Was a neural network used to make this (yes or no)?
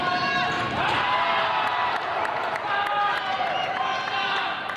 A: no